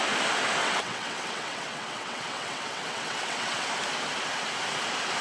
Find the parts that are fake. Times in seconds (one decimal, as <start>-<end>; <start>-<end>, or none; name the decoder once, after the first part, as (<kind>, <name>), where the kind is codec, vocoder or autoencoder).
0.6-3.7 (vocoder, WaveNeXt)

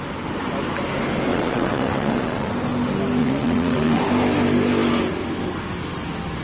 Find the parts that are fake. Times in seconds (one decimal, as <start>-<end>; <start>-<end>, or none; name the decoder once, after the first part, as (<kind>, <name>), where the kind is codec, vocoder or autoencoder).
1.3-2.5 (vocoder, WaveNeXt); 3.2-4.0

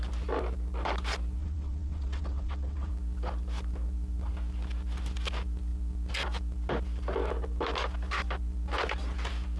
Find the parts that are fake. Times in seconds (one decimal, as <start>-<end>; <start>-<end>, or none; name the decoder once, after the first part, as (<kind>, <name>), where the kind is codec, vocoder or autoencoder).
1.4-2.9 (vocoder, WaveNeXt)

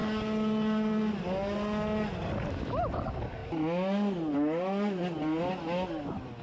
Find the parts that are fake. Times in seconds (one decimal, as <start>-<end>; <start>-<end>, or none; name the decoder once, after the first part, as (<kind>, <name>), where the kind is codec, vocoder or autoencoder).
none

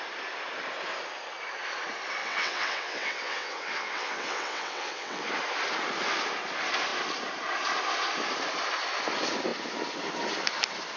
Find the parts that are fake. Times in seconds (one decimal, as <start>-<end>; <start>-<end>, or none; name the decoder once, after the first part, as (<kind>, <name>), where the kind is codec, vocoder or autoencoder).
2.2-5.3 (vocoder, WaveNeXt)

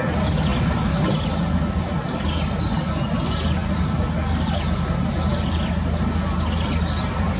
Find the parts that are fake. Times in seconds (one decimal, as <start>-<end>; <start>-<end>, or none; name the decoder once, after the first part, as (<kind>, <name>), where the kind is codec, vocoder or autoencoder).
none